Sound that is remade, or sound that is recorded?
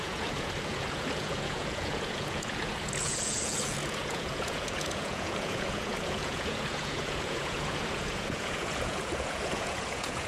remade